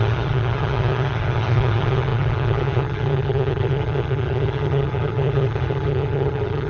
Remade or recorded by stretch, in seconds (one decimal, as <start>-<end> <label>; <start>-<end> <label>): 0.0-6.7 remade